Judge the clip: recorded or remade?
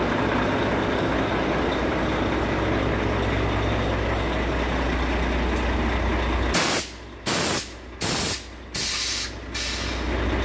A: recorded